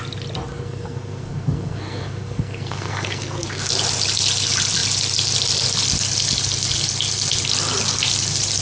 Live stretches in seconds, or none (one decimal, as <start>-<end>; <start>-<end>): 0.0-0.5; 3.7-8.6